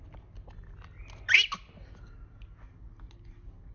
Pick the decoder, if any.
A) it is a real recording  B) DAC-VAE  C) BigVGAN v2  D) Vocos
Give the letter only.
A